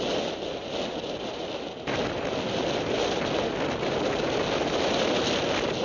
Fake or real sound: real